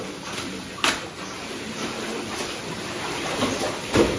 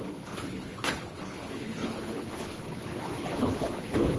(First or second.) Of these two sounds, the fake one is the second